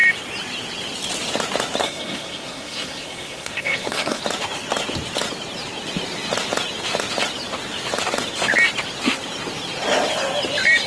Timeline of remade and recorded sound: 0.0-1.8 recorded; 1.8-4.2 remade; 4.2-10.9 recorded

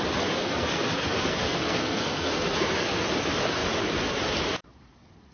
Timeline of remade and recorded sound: 0.0-0.4 recorded; 0.4-3.0 remade; 3.0-5.3 recorded

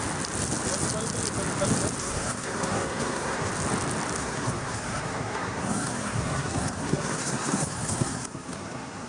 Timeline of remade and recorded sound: 0.0-2.0 recorded; 2.0-3.5 remade; 3.5-4.2 recorded; 4.2-9.1 remade

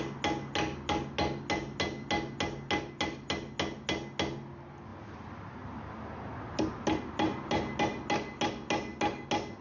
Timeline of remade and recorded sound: 0.0-9.6 recorded

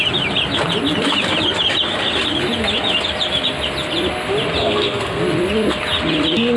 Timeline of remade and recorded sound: 0.0-4.6 recorded; 4.6-5.2 remade; 5.2-6.6 recorded

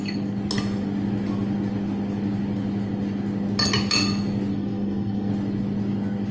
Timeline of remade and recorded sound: 0.0-4.5 recorded; 4.5-5.3 remade; 5.3-6.3 recorded

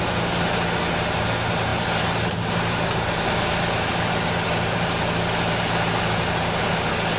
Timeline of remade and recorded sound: 0.0-7.2 recorded

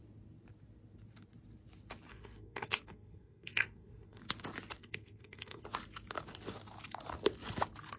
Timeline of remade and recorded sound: 0.0-2.1 recorded; 2.1-4.2 remade; 4.2-4.8 recorded; 4.8-5.6 remade; 5.6-8.0 recorded